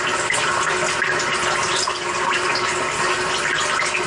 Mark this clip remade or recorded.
recorded